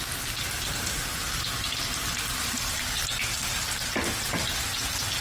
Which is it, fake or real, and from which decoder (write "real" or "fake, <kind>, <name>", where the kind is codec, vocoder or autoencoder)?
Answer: real